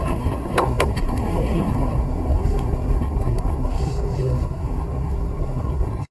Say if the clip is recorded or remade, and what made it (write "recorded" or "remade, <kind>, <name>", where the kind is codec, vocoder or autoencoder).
remade, codec, SNAC